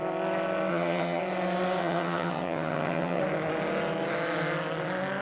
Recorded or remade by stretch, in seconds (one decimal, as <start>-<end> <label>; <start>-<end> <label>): 0.0-0.7 recorded; 0.7-1.2 remade; 1.2-1.8 recorded; 1.8-3.2 remade; 3.2-5.2 recorded